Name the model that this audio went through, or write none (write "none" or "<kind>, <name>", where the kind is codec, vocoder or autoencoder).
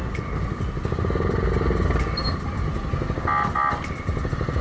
none